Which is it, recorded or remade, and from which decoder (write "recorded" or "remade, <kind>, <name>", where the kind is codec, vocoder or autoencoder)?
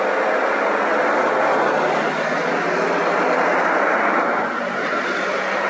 recorded